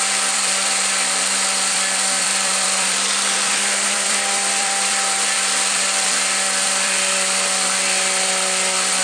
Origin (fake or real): fake